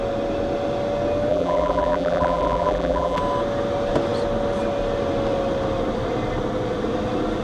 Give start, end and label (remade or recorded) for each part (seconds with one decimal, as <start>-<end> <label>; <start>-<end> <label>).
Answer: 0.0-1.3 recorded; 1.3-3.2 remade; 3.2-7.4 recorded